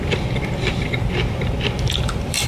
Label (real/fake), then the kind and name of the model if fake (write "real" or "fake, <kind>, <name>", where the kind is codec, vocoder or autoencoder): fake, vocoder, BigVGAN v2